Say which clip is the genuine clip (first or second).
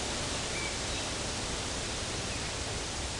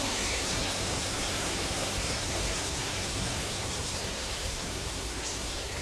first